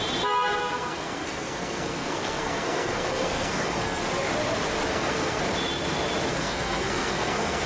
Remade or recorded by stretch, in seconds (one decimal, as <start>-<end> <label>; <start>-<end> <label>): 0.0-0.6 recorded; 0.6-4.0 remade; 4.0-4.9 recorded; 4.9-5.4 remade; 5.4-6.3 recorded; 6.3-7.7 remade